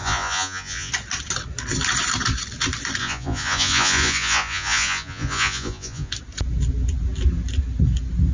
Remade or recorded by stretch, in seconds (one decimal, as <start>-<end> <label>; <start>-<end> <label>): 0.0-0.9 remade; 0.9-3.0 recorded; 3.0-6.1 remade; 6.1-8.3 recorded